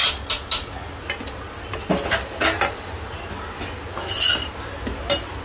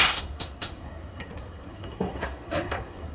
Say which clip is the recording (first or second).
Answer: first